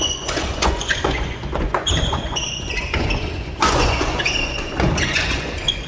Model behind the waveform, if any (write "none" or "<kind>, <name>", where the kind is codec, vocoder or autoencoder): vocoder, Vocos